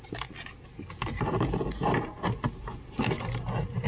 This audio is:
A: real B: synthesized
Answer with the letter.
A